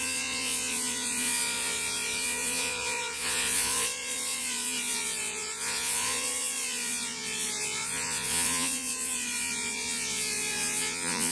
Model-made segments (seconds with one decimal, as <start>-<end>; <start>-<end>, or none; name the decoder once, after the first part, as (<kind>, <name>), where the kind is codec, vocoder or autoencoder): 0.0-11.3 (vocoder, Vocos)

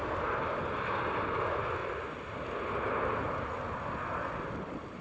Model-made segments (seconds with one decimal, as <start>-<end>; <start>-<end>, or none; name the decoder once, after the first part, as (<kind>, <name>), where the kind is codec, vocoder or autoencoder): none

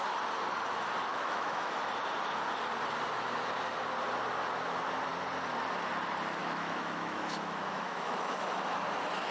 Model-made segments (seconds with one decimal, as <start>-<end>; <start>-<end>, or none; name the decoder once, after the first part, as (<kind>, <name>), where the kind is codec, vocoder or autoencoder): 1.1-1.8 (autoencoder, DAC-VAE); 6.4-8.8